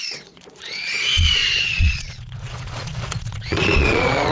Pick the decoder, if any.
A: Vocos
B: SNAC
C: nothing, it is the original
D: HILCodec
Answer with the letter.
A